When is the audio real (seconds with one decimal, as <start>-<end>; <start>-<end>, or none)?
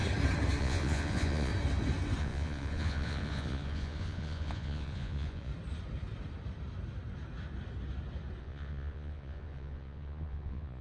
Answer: 0.0-0.6; 1.5-2.2; 5.5-8.4